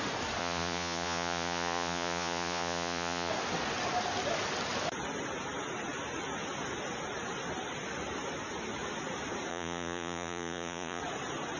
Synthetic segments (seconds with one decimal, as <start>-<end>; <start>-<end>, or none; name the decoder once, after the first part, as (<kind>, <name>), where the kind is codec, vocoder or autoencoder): 0.4-3.3 (vocoder, Vocos); 9.5-11.0